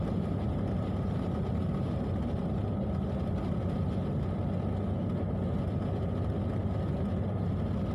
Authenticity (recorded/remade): recorded